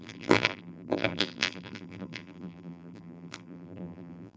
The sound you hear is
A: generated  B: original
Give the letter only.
A